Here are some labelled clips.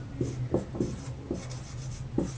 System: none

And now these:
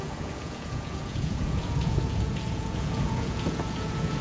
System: vocoder, Vocos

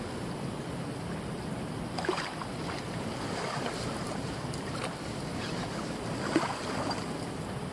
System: none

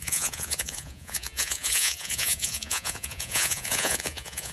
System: vocoder, Vocos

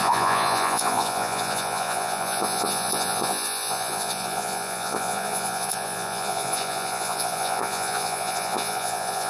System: vocoder, Vocos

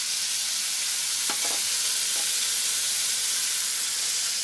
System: none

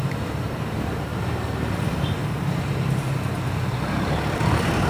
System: vocoder, BigVGAN v2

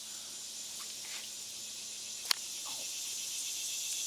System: none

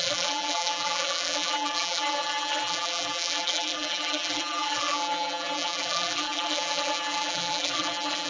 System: vocoder, BigVGAN v2